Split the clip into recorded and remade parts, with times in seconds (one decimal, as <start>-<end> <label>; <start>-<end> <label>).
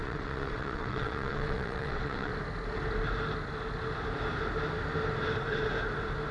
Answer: 0.0-2.3 remade; 2.3-6.3 recorded